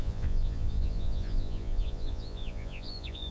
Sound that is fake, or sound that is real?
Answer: fake